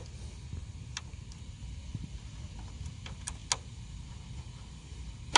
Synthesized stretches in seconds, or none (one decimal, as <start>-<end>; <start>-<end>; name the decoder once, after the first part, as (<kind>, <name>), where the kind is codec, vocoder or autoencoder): none